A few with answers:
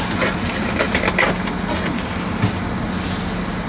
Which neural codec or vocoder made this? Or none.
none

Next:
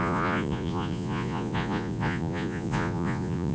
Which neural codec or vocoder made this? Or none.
vocoder, Vocos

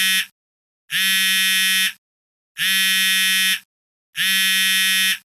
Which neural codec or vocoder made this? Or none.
none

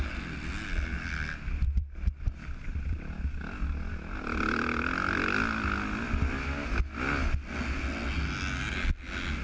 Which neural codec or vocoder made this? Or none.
none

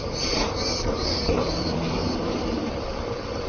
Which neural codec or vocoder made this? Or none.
vocoder, BigVGAN v2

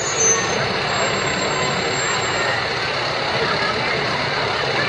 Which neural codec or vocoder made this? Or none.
none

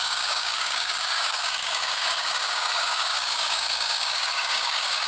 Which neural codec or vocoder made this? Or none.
codec, DAC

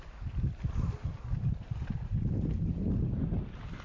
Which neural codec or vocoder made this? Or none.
none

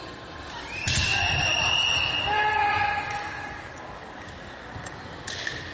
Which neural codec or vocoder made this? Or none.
none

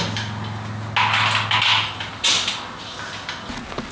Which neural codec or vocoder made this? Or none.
none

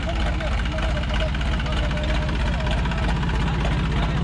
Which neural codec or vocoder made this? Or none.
none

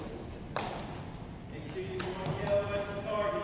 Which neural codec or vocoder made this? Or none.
none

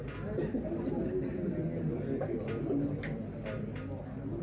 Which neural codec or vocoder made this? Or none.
none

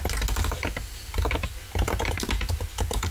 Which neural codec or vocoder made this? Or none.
none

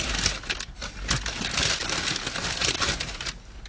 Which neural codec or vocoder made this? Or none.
none